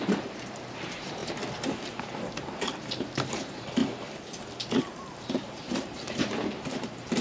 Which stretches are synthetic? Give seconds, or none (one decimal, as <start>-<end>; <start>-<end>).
0.0-1.2; 2.3-3.8; 4.8-7.2